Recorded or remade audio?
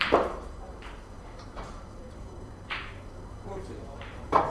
remade